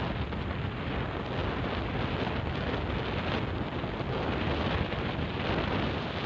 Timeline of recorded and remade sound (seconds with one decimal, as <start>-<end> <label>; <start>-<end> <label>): 0.0-6.3 recorded